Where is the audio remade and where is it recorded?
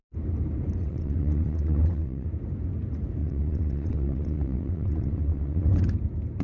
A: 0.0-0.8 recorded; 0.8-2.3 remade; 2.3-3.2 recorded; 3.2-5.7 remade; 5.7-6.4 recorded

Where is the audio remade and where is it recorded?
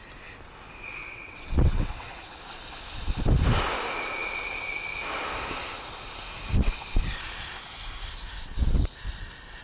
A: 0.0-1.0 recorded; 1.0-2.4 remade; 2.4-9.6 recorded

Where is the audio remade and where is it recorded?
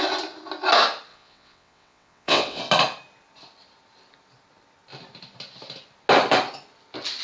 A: 0.0-1.1 recorded; 1.1-2.6 remade; 2.6-7.2 recorded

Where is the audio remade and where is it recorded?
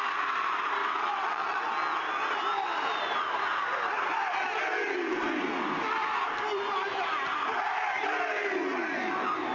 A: 0.0-0.8 recorded; 0.8-1.7 remade; 1.7-9.5 recorded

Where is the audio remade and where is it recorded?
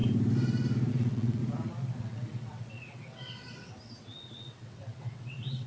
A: 0.0-0.9 recorded; 0.9-1.4 remade; 1.4-2.0 recorded; 2.0-5.7 remade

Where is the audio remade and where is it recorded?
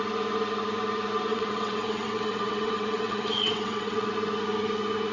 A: 0.0-1.3 recorded; 1.3-4.1 remade; 4.1-5.1 recorded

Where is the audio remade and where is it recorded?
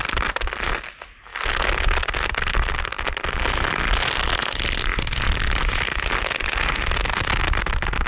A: 0.0-8.1 recorded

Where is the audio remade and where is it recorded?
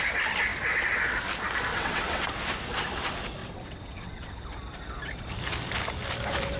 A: 0.0-1.7 recorded; 1.7-2.3 remade; 2.3-3.4 recorded; 3.4-4.4 remade; 4.4-6.6 recorded